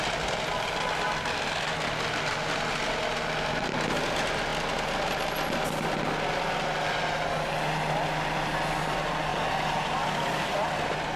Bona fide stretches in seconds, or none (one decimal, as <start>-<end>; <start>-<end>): 0.0-11.2